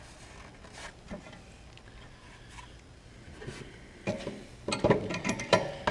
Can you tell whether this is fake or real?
real